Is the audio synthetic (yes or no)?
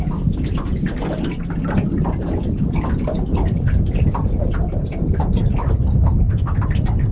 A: no